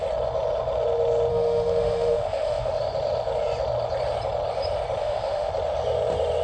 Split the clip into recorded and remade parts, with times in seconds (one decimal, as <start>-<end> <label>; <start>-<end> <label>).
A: 0.0-1.3 recorded; 1.3-2.8 remade; 2.8-5.0 recorded; 5.0-5.5 remade; 5.5-6.4 recorded